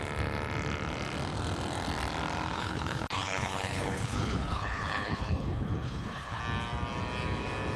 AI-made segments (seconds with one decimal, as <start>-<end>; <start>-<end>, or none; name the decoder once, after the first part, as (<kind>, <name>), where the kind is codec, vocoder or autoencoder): 2.5-6.4 (codec, HILCodec)